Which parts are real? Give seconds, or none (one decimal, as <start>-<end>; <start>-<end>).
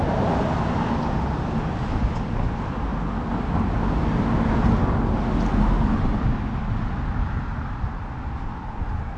0.0-9.2